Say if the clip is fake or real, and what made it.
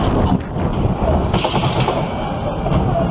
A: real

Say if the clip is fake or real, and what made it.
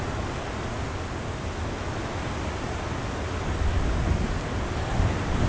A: fake, vocoder, BigVGAN v2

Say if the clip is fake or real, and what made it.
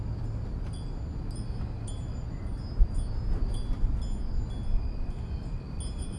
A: real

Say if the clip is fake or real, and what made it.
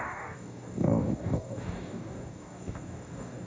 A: fake, codec, DAC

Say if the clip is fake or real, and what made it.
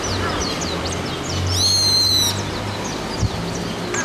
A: real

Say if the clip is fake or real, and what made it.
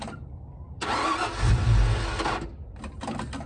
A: real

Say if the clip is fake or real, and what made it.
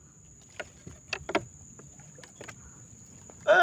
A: real